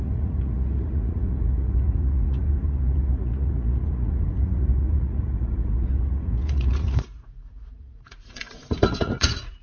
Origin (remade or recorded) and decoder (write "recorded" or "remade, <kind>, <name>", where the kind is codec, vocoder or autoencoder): remade, vocoder, Vocos